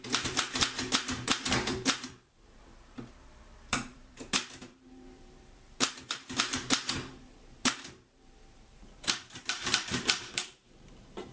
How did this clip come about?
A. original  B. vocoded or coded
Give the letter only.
B